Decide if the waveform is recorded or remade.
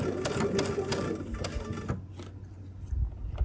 recorded